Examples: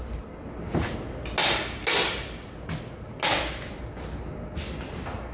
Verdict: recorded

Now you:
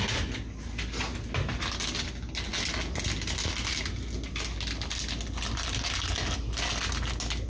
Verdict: recorded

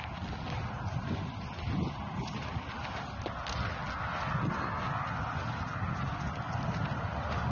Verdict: recorded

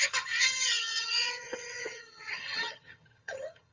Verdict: remade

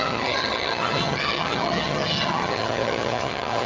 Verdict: remade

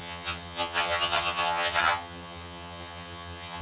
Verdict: remade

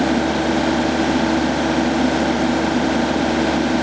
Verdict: recorded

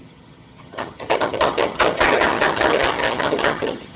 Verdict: remade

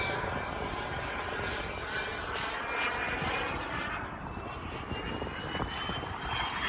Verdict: recorded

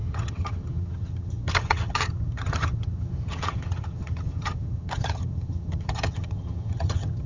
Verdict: remade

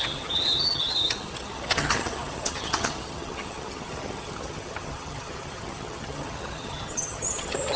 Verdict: remade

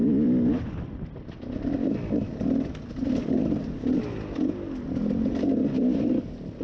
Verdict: recorded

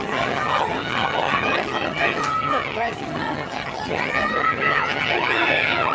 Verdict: remade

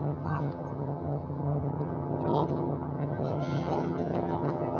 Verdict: remade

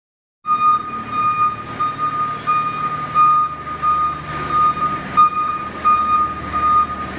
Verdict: recorded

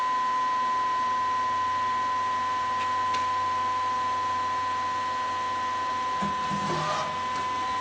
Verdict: recorded